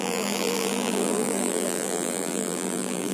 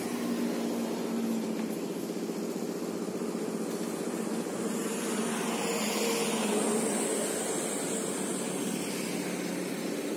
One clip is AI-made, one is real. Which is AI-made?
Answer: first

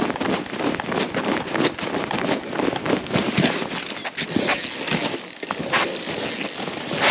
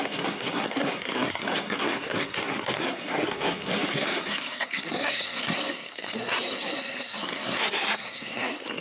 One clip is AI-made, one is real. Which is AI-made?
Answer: second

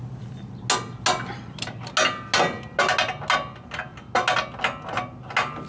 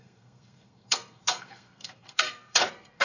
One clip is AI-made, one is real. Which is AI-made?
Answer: second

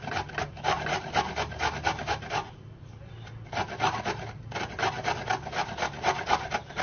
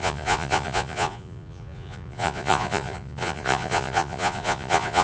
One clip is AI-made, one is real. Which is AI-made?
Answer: second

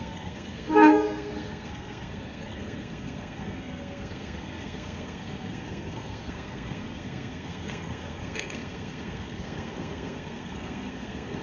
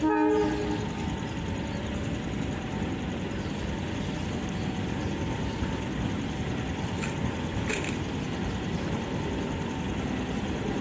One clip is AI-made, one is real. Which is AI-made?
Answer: first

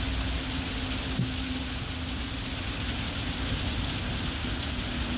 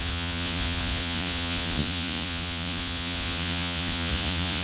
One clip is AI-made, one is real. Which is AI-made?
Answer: second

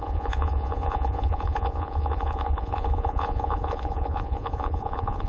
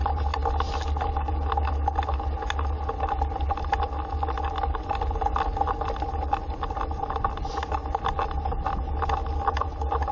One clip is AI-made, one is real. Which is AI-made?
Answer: first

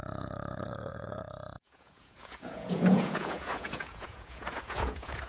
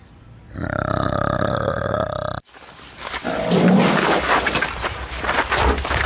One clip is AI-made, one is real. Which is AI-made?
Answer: first